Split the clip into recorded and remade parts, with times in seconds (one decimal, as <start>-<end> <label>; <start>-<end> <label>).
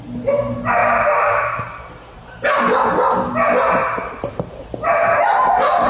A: 0.0-0.8 recorded; 0.8-3.3 remade; 3.3-3.8 recorded; 3.8-4.6 remade; 4.6-5.9 recorded